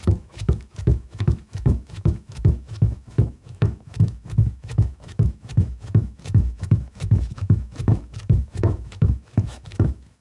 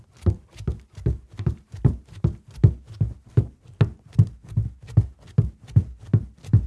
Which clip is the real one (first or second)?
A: second